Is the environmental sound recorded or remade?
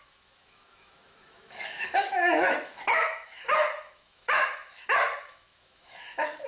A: remade